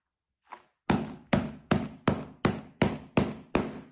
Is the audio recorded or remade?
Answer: recorded